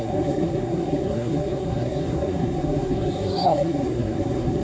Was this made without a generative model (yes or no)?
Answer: no